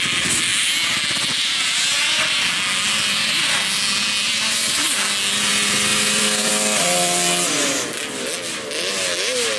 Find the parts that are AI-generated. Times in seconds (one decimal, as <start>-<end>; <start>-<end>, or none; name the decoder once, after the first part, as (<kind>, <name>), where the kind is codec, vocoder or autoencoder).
5.9-6.5 (vocoder, BigVGAN v2)

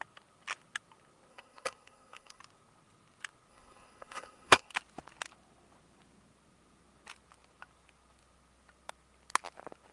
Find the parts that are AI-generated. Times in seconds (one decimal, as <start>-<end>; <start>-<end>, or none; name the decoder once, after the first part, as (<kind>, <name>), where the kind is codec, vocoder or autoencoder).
1.3-2.4 (codec, SNAC); 3.5-4.7

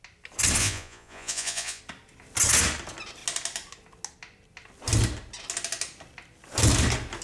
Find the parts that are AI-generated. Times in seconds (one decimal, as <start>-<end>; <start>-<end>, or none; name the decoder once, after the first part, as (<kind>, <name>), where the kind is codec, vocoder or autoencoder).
0.6-1.8 (vocoder, Vocos)